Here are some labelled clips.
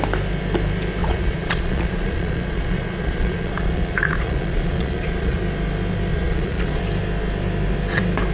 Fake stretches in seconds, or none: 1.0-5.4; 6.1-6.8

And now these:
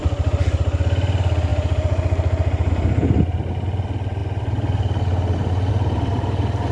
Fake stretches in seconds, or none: none

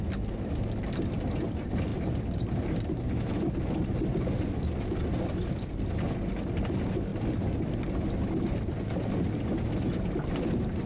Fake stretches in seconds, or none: none

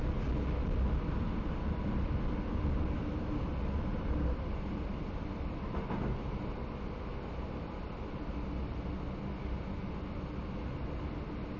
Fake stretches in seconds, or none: 3.9-6.4

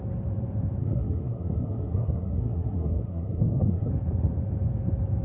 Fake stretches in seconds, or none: 0.8-3.9

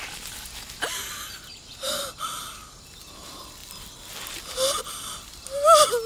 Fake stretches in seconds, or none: none